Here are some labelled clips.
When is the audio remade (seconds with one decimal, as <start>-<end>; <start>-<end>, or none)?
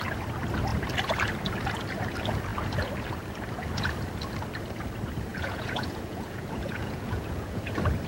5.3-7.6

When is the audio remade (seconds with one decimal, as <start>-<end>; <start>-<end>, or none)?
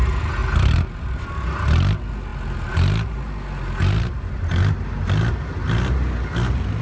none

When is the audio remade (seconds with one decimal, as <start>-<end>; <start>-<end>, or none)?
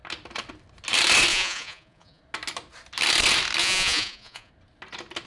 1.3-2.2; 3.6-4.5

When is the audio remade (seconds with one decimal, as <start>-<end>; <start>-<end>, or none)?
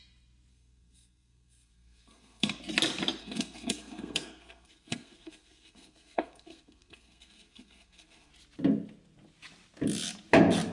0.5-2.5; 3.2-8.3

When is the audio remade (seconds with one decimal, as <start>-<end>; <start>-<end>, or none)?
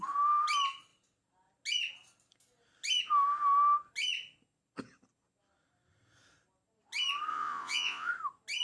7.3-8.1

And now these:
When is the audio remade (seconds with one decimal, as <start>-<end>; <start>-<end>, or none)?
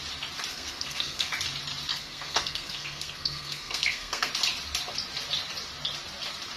0.5-1.3; 1.9-4.3